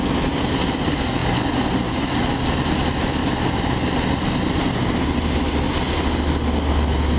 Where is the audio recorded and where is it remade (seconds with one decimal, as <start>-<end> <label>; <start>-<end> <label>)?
0.0-3.2 recorded; 3.2-3.7 remade; 3.7-7.2 recorded